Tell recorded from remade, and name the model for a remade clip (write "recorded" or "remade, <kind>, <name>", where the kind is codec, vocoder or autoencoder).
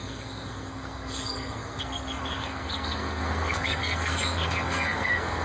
remade, codec, SNAC